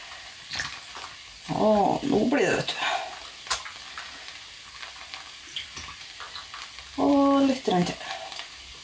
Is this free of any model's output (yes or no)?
yes